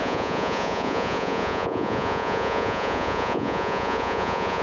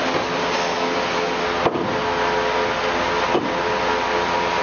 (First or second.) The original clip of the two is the second